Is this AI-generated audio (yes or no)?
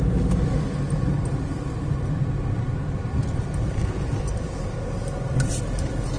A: no